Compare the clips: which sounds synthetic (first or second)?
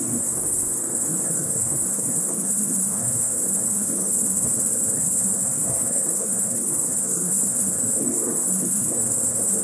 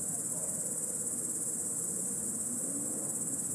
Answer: first